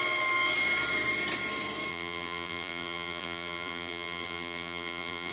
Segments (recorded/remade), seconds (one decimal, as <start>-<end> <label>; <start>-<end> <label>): 0.0-1.9 recorded; 1.9-5.3 remade